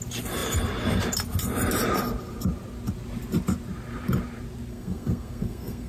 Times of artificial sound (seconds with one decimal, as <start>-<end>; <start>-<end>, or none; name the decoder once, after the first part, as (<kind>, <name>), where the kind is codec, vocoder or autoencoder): 4.7-5.9 (codec, SNAC)